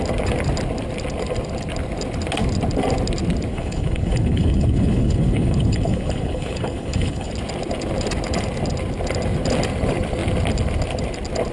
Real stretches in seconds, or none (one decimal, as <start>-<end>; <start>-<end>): 0.0-3.5; 7.3-11.5